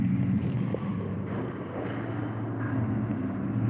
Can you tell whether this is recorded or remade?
recorded